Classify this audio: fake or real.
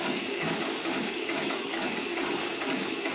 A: fake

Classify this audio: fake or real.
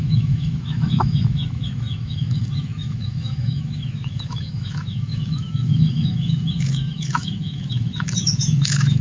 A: fake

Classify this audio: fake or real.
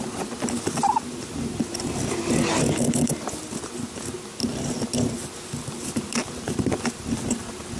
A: real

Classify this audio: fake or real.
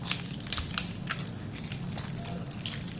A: real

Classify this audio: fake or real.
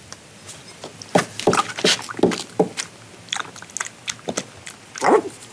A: real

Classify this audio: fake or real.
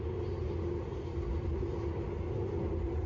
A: real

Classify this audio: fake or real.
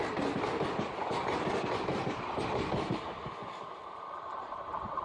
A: real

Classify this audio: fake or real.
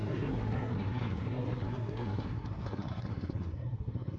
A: fake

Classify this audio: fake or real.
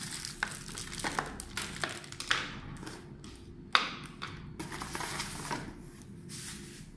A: real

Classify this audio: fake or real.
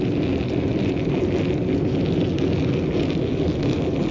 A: real